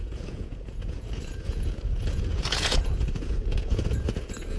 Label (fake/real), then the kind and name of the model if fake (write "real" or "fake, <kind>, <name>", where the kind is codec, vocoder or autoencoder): fake, vocoder, Vocos